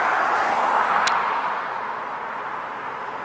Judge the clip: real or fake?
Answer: real